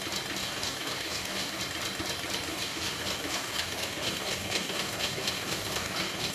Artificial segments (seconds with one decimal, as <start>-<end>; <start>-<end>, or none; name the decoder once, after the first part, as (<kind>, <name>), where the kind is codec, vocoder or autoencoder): 0.4-1.6 (codec, DAC); 2.5-6.3